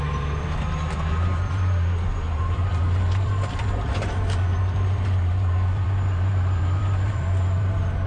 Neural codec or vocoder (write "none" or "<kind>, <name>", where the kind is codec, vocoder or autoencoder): vocoder, BigVGAN v2